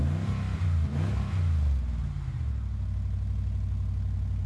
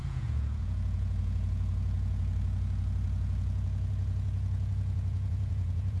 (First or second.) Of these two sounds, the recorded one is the first